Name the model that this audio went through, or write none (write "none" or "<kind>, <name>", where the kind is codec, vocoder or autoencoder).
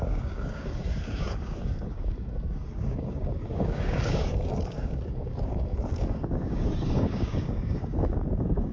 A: codec, DAC